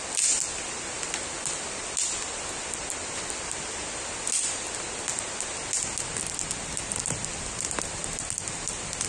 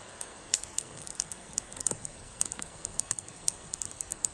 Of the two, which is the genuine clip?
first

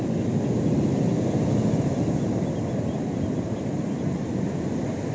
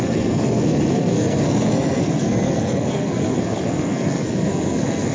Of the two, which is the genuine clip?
first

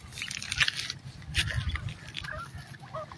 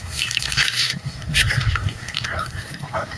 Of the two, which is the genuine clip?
first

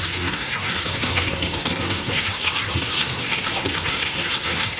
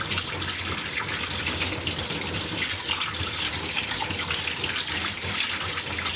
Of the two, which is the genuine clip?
second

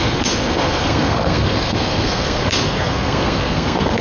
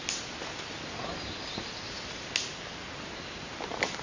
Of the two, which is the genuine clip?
second